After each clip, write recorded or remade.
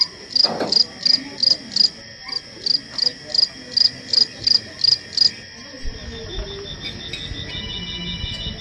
recorded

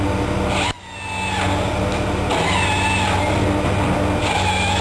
recorded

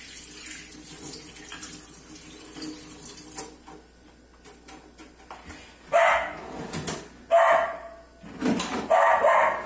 recorded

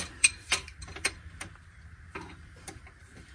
remade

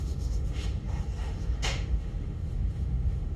remade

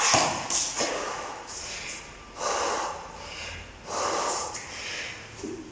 recorded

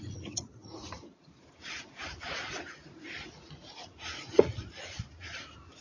remade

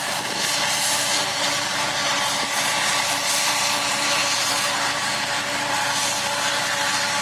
remade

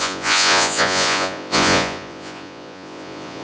remade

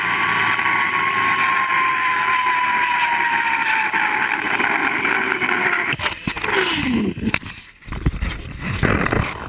recorded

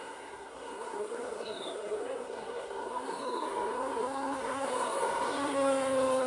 remade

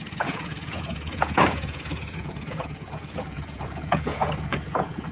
remade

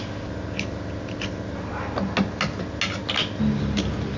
recorded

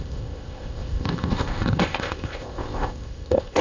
remade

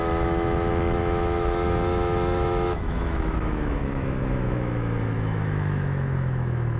remade